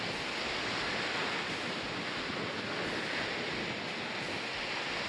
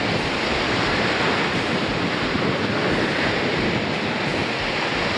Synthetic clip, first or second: second